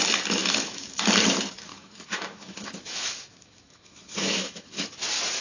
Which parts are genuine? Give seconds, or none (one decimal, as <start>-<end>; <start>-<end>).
0.0-0.4; 1.0-1.7; 4.9-5.4